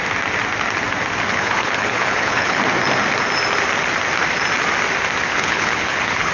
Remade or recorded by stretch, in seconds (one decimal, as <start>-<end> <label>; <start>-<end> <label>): 0.0-1.3 recorded; 1.3-2.6 remade; 2.6-5.3 recorded; 5.3-6.3 remade